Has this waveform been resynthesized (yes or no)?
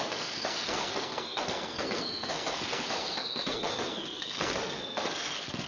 yes